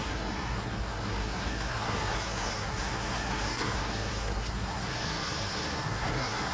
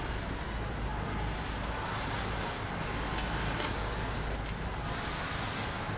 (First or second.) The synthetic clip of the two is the first